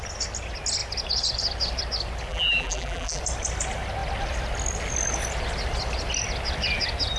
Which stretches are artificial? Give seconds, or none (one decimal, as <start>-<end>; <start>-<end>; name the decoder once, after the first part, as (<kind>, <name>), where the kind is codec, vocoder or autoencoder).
2.3-3.2 (vocoder, BigVGAN v2)